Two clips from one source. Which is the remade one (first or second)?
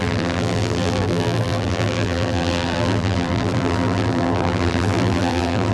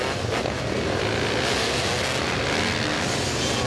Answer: first